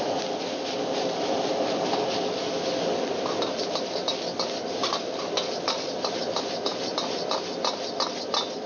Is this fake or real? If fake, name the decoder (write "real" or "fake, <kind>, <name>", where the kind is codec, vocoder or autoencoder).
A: real